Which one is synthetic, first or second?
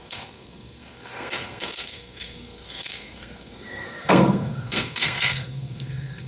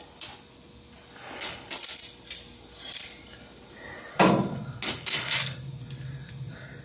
first